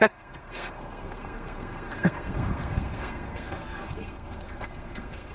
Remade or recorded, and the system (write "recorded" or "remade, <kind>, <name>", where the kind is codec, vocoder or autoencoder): remade, codec, SNAC